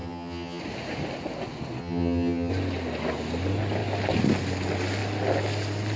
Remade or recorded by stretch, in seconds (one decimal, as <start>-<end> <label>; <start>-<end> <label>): 0.0-0.6 remade; 0.6-1.8 recorded; 1.8-2.5 remade; 2.5-6.0 recorded